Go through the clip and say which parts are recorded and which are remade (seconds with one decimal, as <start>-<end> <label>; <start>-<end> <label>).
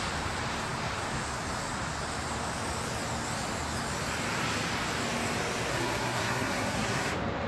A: 0.0-5.7 recorded; 5.7-7.1 remade; 7.1-7.5 recorded